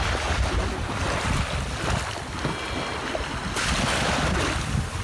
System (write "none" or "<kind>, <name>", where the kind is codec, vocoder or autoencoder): none